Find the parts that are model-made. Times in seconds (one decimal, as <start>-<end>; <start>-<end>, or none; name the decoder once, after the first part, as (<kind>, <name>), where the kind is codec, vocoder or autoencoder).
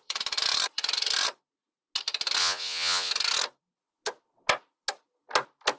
2.4-3.1 (vocoder, Vocos)